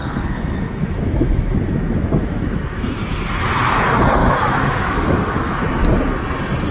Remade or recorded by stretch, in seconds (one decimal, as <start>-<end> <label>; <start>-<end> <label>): 0.0-2.8 remade; 2.8-4.2 recorded; 4.2-5.9 remade; 5.9-6.7 recorded